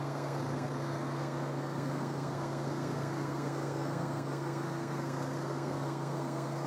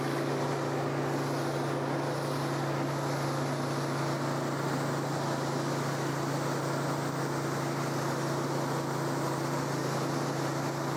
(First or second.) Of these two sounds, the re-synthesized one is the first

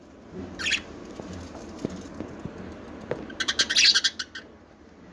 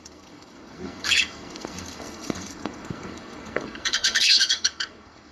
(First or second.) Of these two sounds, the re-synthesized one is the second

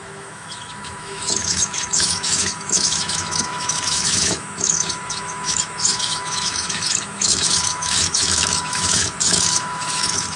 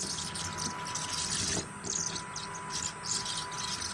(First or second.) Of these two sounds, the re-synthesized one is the first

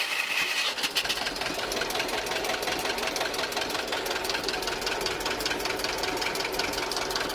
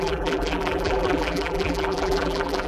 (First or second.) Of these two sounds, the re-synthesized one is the second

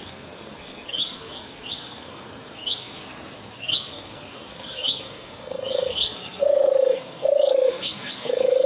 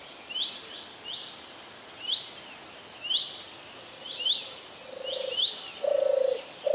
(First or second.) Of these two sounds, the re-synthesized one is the first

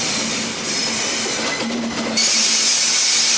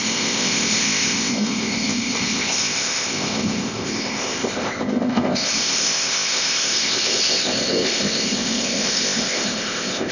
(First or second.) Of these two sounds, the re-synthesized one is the second